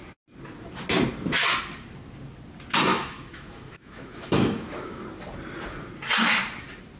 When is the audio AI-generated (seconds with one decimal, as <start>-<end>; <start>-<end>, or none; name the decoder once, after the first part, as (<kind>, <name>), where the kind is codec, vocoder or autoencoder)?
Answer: 2.9-5.0 (autoencoder, DAC-VAE)